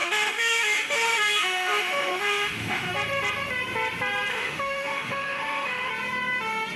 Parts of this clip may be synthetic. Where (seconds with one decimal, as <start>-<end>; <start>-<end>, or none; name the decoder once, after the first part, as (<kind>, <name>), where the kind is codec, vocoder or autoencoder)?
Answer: 0.0-2.9 (autoencoder, DAC-VAE); 4.3-5.9